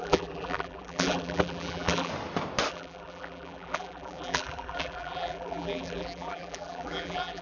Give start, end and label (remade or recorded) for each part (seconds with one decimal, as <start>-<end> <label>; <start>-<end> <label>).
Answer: 0.0-2.1 remade; 2.1-2.7 recorded; 2.7-7.4 remade